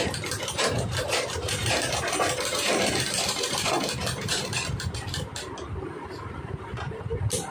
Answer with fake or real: fake